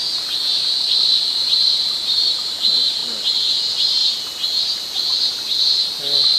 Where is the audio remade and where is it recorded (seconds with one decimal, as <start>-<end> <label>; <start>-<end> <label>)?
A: 0.0-0.7 recorded; 0.7-3.0 remade; 3.0-3.6 recorded; 3.6-4.0 remade; 4.0-4.6 recorded; 4.6-6.4 remade

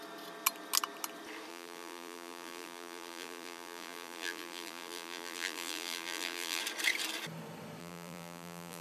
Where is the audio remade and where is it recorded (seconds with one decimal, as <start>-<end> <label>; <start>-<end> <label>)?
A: 0.0-1.5 recorded; 1.5-6.6 remade; 6.6-7.8 recorded; 7.8-8.8 remade

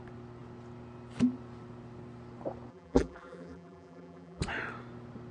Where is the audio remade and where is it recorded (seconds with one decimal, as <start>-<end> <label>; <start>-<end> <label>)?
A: 0.0-2.7 recorded; 2.7-4.4 remade; 4.4-5.3 recorded

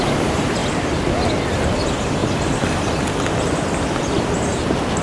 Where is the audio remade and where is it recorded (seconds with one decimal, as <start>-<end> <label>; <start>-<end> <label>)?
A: 0.0-0.6 remade; 0.6-1.5 recorded; 1.5-2.2 remade; 2.2-4.0 recorded; 4.0-5.0 remade

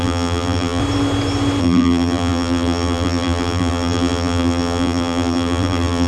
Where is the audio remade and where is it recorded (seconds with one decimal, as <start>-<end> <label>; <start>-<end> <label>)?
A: 0.0-0.8 remade; 0.8-1.6 recorded; 1.6-6.1 remade